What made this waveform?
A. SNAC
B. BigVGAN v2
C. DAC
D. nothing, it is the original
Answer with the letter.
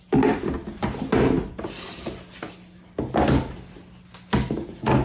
D